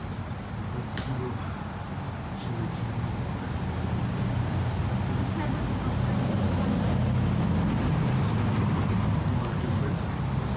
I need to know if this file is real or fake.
real